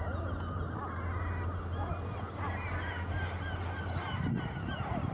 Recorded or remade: recorded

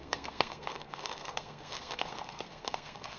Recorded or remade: remade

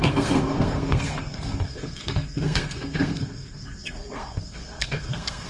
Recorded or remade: remade